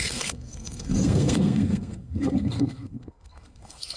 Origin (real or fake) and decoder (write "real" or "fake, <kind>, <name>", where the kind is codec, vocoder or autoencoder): fake, codec, SNAC